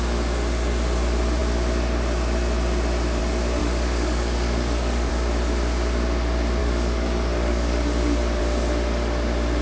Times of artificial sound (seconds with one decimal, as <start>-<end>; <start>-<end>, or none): 3.6-5.1; 6.6-8.4